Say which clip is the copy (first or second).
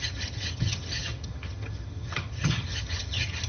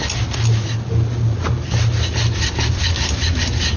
first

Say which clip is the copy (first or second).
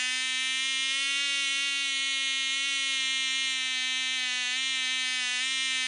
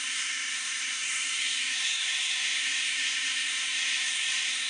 second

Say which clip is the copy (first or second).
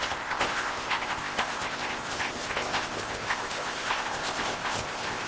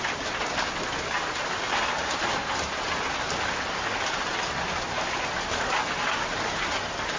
first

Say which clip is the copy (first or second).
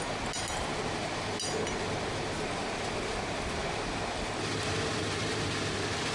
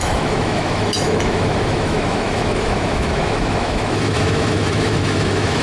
second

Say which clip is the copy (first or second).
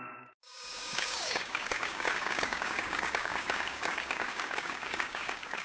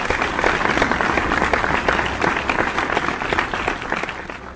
first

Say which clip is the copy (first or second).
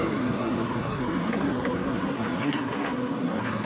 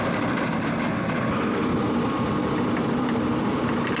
first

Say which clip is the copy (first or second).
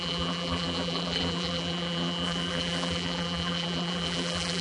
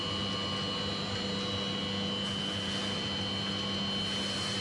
first